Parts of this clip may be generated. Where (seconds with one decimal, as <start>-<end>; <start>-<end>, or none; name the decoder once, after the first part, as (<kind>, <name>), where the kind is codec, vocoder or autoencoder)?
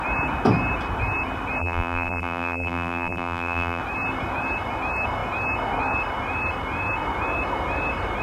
1.6-3.8 (vocoder, BigVGAN v2)